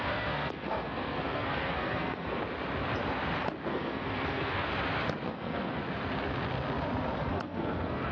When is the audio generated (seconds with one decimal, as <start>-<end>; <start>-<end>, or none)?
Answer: 0.0-2.4; 3.7-4.7; 5.3-5.8; 7.3-8.1